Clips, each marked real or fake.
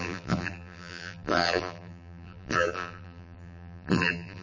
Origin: fake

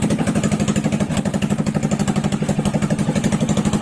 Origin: real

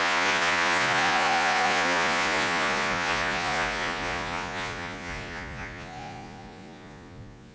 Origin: fake